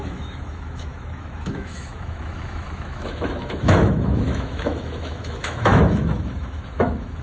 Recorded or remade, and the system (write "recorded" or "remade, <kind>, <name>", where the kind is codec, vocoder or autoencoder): remade, autoencoder, DAC-VAE